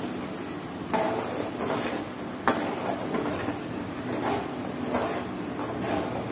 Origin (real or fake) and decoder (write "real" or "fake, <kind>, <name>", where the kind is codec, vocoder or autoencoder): real